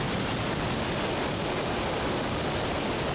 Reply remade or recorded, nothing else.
recorded